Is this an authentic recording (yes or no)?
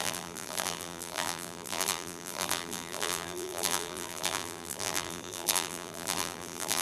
no